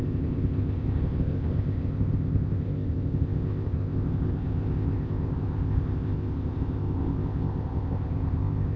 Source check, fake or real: fake